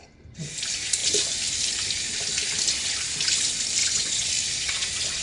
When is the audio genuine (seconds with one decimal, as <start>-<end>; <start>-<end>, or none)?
0.0-3.8; 4.3-5.2